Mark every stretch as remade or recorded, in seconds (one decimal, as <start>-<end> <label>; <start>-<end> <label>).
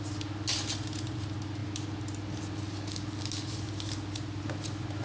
0.0-5.0 recorded